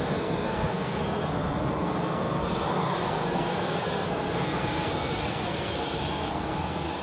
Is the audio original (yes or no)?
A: no